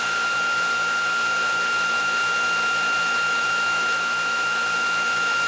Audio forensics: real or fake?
fake